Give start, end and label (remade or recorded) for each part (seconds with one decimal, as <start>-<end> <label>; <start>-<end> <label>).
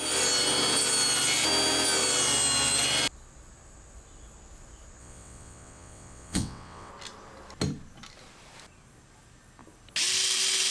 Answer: 0.0-5.0 recorded; 5.0-6.9 remade; 6.9-10.7 recorded